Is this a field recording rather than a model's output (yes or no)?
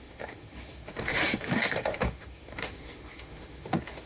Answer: no